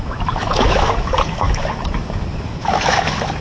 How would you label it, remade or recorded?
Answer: remade